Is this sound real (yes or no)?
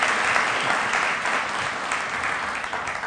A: yes